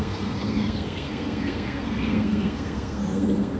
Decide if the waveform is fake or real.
fake